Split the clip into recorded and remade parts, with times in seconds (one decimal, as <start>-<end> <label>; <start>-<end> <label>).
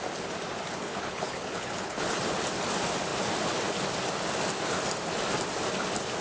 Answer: 0.0-0.7 recorded; 0.7-2.2 remade; 2.2-6.2 recorded